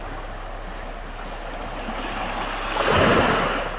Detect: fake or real real